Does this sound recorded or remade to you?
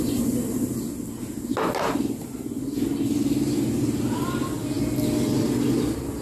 recorded